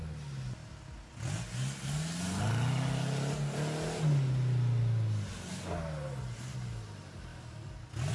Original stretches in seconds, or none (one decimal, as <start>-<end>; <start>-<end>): 0.0-8.1